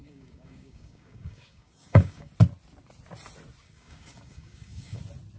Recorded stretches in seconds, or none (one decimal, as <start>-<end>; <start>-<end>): 2.3-3.6; 5.0-5.4